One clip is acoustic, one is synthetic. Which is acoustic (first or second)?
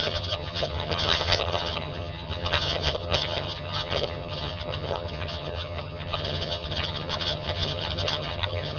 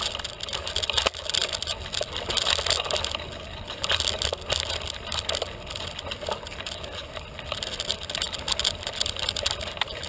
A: second